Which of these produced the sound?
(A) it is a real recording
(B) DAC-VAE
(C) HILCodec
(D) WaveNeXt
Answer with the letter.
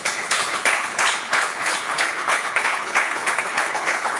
C